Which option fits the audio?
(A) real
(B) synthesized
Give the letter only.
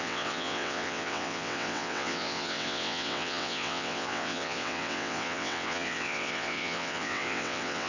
B